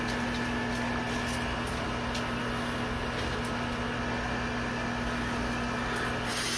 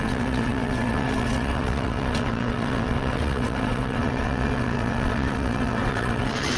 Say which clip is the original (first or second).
first